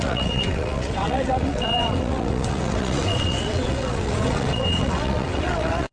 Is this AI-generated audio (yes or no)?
yes